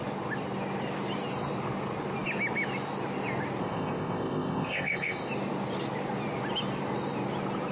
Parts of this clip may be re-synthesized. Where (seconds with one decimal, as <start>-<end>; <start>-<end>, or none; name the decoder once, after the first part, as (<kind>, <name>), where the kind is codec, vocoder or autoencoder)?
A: 3.6-5.3 (codec, ZipCodec)